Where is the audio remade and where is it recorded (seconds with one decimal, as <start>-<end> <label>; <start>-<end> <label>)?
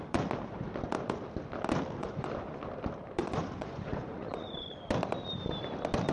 0.0-2.0 recorded; 2.0-2.6 remade; 2.6-3.2 recorded; 3.2-4.8 remade; 4.8-6.1 recorded